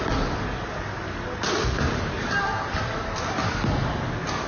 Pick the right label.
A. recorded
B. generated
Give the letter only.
A